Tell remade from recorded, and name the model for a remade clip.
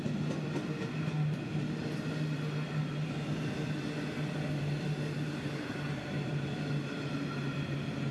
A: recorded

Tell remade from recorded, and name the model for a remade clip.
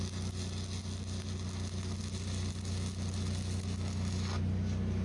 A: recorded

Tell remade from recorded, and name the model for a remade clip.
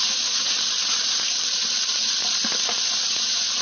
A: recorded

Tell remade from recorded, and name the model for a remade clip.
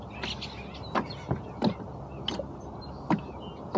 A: recorded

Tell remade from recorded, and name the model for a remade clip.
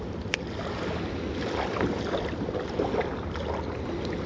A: recorded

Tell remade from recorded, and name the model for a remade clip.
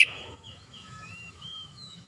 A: remade, autoencoder, DAC-VAE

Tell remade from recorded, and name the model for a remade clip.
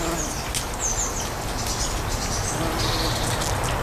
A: recorded